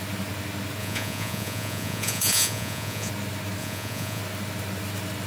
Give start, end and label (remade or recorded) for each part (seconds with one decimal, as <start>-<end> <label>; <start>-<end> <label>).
0.0-0.8 recorded; 0.8-3.1 remade; 3.1-3.6 recorded; 3.6-4.2 remade; 4.2-5.3 recorded